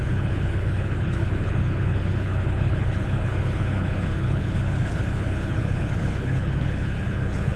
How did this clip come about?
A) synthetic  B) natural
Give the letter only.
A